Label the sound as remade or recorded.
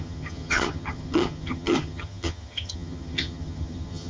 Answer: remade